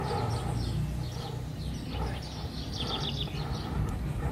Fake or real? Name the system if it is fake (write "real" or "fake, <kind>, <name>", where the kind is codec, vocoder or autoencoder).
real